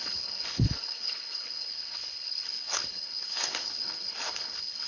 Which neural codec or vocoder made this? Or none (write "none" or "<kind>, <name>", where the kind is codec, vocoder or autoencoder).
codec, HILCodec